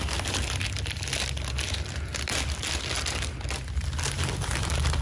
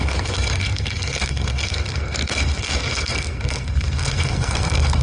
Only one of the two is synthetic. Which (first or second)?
second